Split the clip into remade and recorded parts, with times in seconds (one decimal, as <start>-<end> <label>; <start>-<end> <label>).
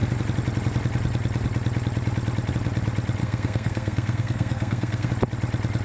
0.0-3.2 recorded; 3.2-5.1 remade; 5.1-5.8 recorded